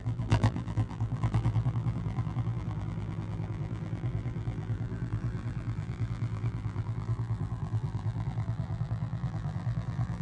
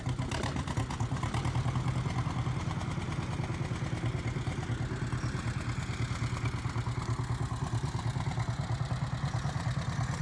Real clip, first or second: second